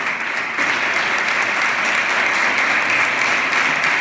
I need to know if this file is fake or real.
real